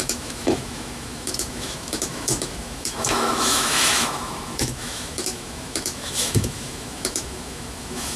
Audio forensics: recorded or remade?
remade